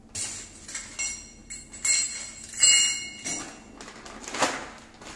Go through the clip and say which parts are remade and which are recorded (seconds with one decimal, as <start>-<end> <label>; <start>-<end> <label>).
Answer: 0.0-5.2 recorded